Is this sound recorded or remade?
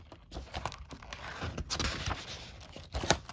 recorded